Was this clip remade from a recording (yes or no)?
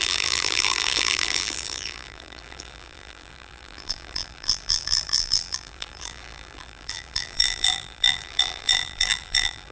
yes